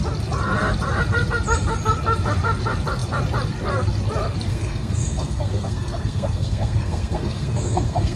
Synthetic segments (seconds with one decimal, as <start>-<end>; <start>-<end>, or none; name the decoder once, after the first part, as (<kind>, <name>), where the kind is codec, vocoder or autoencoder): 4.5-8.2 (codec, SNAC)